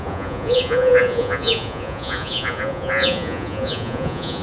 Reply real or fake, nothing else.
fake